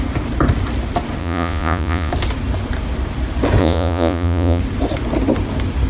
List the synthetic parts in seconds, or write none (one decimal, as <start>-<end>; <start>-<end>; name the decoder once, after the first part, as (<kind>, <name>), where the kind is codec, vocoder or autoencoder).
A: 1.2-2.1 (vocoder, Vocos); 3.6-4.6